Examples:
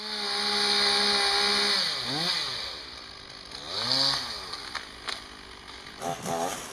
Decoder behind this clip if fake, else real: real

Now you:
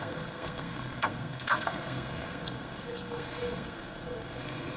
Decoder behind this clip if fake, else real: fake, codec, SNAC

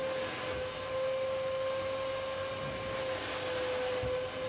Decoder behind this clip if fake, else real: real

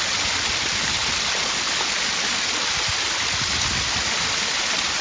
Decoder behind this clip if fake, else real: real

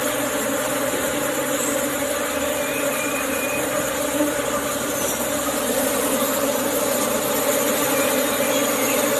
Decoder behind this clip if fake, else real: real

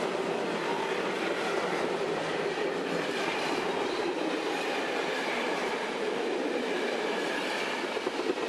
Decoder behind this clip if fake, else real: real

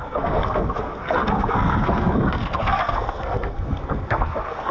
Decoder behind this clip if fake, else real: fake, codec, SNAC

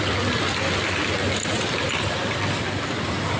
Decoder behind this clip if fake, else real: real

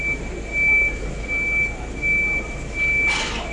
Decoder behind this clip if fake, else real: real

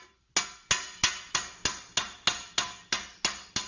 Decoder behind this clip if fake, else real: real